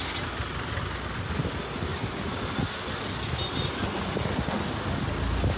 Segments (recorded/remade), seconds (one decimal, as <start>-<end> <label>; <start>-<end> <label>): 0.0-5.6 recorded